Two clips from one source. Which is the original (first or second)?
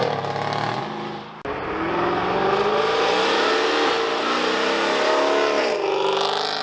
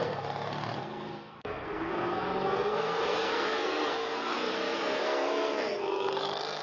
first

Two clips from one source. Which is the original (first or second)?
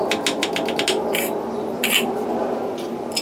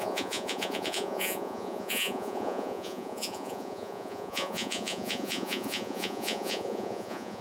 first